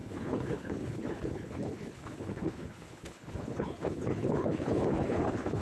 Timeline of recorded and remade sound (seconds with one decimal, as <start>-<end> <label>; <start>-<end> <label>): 0.0-5.6 remade